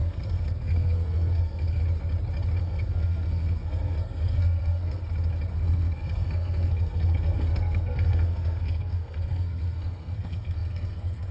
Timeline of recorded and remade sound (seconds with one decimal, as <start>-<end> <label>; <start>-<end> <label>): 0.0-1.8 remade; 1.8-2.6 recorded; 2.6-5.0 remade; 5.0-5.5 recorded; 5.5-11.3 remade